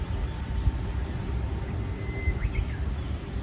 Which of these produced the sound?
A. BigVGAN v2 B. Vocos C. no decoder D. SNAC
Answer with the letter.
C